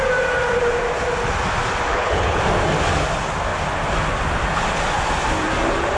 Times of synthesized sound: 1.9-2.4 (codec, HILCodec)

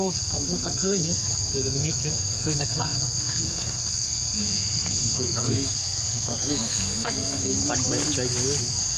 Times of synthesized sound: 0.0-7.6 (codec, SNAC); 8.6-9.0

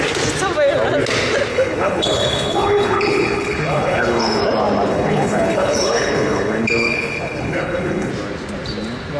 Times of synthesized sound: 1.5-4.4 (codec, HILCodec); 4.9-8.1

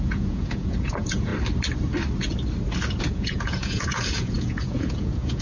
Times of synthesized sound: 0.0-1.3 (vocoder, Vocos); 3.0-5.4